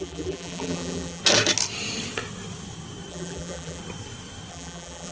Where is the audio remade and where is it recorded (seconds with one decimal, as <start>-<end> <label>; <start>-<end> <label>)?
0.0-1.2 remade; 1.2-3.1 recorded; 3.1-3.8 remade; 3.8-4.5 recorded; 4.5-5.1 remade